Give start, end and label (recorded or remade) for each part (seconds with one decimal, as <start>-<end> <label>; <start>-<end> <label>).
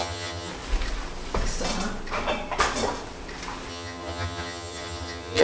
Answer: 0.0-0.5 remade; 0.5-3.7 recorded; 3.7-5.4 remade